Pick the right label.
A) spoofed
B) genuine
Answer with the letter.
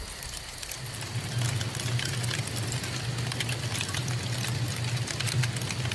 B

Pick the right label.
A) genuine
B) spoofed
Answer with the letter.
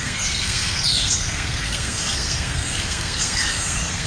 B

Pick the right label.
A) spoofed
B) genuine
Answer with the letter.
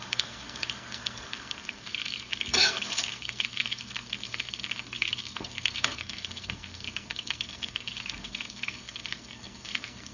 A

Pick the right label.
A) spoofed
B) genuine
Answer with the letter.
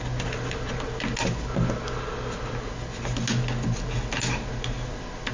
B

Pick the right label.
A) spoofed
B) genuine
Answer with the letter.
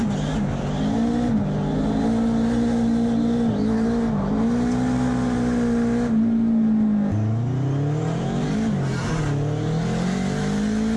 B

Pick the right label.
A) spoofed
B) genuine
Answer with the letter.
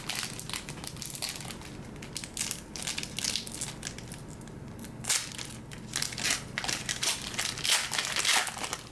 B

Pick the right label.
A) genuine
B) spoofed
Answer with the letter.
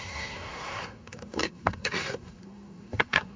B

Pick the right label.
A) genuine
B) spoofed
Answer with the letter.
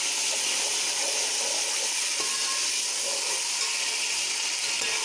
A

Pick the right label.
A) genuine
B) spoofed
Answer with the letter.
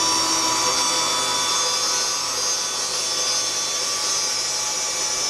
A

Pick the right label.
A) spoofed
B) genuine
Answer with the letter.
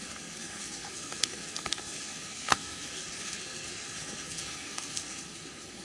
A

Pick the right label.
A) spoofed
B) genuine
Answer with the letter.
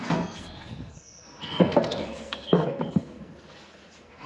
A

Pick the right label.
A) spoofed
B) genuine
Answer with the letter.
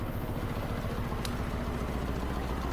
B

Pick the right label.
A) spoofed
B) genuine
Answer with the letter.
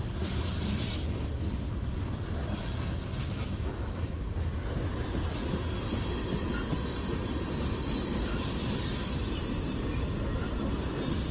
B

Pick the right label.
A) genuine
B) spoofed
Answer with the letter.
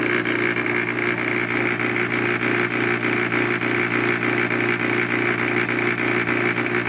A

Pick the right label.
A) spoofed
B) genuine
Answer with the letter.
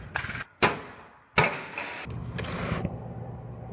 B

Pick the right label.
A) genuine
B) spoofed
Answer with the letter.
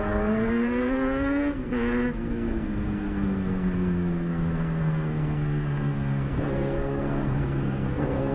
B